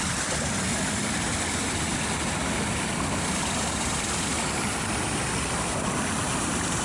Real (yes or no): yes